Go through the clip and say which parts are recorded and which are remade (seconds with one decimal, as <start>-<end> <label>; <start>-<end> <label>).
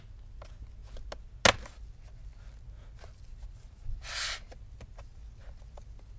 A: 0.0-6.2 recorded